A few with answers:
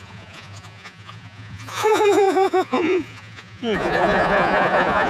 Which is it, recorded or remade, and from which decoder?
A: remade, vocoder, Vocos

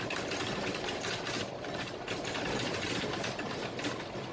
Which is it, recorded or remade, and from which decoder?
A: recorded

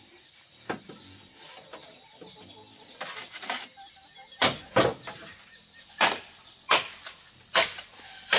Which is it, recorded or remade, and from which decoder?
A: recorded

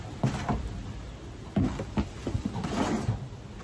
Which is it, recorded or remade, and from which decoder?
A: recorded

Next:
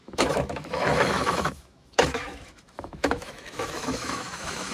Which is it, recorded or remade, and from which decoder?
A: remade, autoencoder, DAC-VAE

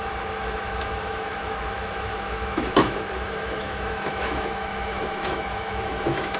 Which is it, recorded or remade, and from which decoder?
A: remade, autoencoder, DAC-VAE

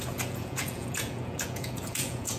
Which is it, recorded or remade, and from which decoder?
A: remade, vocoder, Vocos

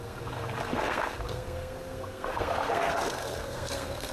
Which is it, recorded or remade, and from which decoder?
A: remade, codec, SNAC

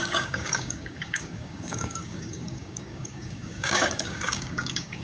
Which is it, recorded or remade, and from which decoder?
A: remade, codec, DAC